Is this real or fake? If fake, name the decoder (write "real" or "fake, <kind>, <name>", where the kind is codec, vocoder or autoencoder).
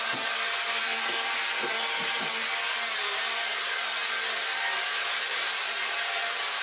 real